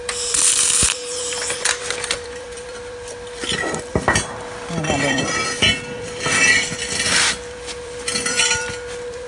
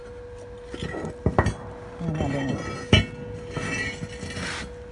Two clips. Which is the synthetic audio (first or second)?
first